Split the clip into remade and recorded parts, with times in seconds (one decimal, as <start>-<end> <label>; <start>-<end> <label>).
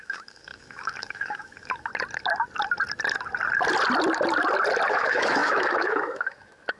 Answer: 0.0-1.9 remade; 1.9-4.9 recorded; 4.9-6.8 remade